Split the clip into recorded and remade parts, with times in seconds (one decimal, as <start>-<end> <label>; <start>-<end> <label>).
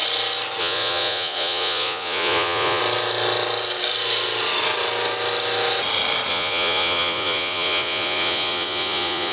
0.0-0.6 recorded; 0.6-2.8 remade; 2.8-6.3 recorded; 6.3-9.3 remade